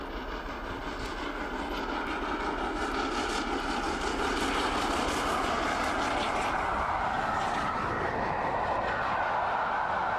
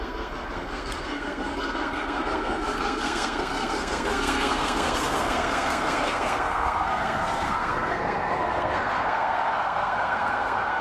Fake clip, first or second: second